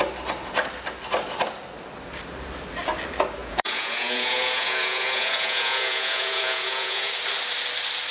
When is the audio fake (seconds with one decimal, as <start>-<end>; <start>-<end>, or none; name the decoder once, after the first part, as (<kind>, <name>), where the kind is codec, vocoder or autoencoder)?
3.4-7.1 (vocoder, Vocos)

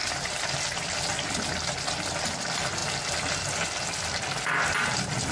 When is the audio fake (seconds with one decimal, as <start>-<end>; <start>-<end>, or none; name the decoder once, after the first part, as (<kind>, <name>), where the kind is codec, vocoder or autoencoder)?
0.0-2.2 (vocoder, BigVGAN v2)

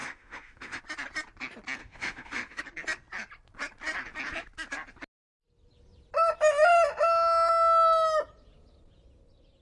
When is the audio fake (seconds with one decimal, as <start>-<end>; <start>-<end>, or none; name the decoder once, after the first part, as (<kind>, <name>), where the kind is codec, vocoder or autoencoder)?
0.0-0.8 (autoencoder, DAC-VAE); 1.8-2.6

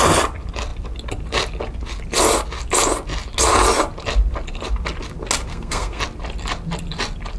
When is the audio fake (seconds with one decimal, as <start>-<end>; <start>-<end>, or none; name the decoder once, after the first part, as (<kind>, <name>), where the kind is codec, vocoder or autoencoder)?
5.5-6.0 (codec, SNAC)

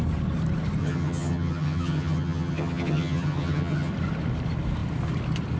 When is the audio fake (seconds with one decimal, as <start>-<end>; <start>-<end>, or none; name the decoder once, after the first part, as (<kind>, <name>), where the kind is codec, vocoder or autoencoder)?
0.8-3.9 (vocoder, HiFi-GAN)

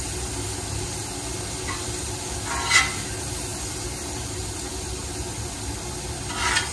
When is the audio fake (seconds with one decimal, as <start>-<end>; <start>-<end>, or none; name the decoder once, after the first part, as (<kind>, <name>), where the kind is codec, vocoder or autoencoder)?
none

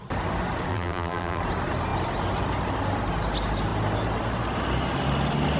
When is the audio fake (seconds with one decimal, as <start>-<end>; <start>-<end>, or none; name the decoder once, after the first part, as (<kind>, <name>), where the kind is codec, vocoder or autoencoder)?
0.7-1.4 (vocoder, BigVGAN v2)

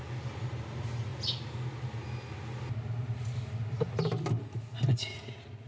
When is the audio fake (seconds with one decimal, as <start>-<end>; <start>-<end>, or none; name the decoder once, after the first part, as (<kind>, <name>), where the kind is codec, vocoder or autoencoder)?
none